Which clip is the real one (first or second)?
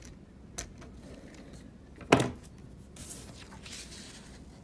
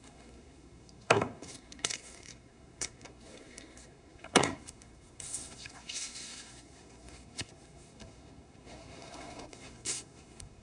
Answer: first